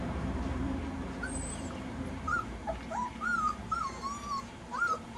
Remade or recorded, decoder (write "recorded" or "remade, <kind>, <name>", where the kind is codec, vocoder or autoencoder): remade, vocoder, BigVGAN v2